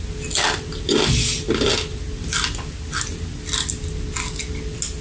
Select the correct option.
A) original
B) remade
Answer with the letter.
A